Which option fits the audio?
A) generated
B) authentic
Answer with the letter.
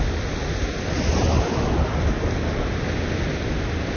B